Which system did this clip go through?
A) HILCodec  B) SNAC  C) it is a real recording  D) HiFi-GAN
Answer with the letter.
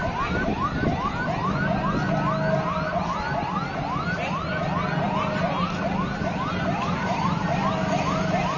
C